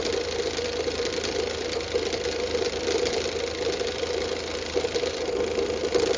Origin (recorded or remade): recorded